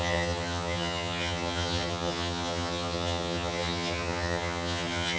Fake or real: fake